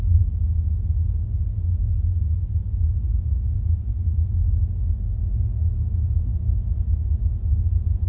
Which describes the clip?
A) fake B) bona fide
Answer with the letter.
B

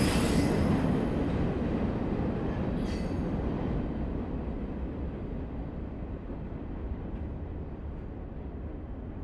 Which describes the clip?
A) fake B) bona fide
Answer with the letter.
B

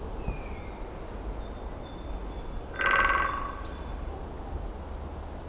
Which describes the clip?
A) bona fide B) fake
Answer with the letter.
A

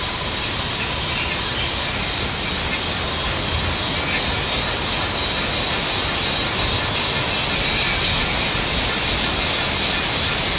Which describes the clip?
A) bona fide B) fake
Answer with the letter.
A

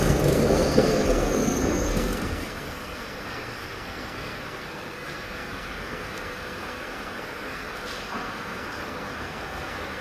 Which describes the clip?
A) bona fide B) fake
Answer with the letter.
B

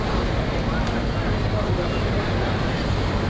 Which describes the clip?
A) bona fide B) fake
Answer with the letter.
A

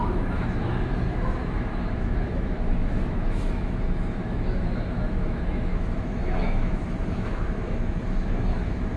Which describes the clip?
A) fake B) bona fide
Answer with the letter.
A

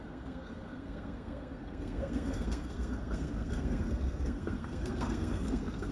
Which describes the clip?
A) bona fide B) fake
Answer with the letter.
B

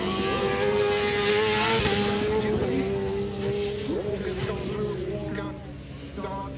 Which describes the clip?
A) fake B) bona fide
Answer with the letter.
B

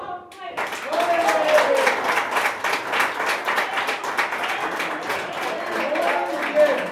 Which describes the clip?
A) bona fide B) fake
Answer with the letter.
A